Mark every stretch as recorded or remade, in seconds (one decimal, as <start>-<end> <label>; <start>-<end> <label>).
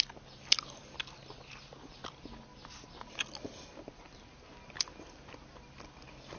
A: 0.0-6.4 recorded